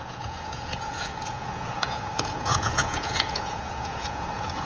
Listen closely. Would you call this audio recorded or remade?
remade